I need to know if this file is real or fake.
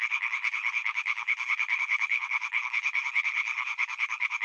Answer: fake